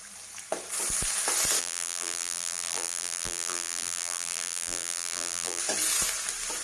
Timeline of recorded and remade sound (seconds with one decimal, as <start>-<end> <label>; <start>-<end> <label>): 0.0-1.6 recorded; 1.6-5.6 remade; 5.6-6.6 recorded